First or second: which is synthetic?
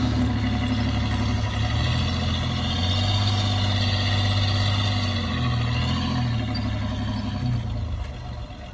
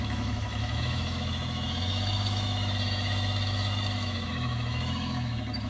second